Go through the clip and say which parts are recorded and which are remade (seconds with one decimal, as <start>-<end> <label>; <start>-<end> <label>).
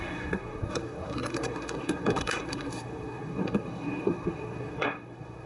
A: 0.0-5.5 remade